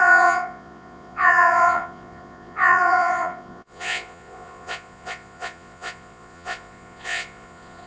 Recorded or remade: remade